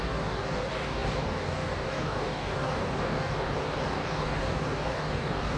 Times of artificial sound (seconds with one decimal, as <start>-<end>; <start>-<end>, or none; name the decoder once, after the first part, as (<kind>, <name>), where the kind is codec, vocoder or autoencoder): 0.0-5.6 (codec, DAC)

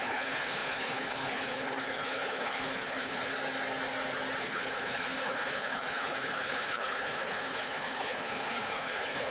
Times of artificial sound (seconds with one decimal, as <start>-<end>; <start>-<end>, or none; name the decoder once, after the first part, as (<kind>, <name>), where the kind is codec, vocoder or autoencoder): 0.0-3.3 (codec, HILCodec); 4.4-9.3

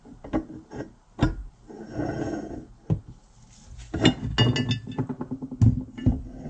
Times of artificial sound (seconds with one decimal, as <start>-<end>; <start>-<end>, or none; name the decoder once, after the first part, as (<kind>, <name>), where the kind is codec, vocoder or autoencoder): none

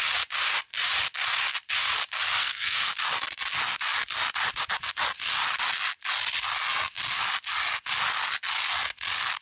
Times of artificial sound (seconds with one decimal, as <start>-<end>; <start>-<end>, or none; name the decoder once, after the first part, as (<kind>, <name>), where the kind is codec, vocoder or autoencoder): 2.4-2.9 (codec, SNAC)

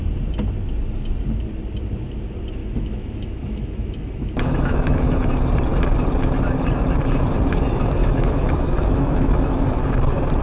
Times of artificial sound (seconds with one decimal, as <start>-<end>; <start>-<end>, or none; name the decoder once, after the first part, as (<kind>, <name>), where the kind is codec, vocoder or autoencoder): 2.6-5.3 (autoencoder, DAC-VAE); 8.0-9.8

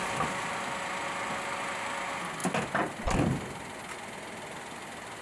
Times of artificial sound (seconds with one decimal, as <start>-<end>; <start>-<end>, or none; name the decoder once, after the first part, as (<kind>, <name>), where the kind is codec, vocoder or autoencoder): none